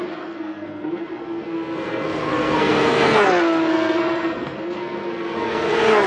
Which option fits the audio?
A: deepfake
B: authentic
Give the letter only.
A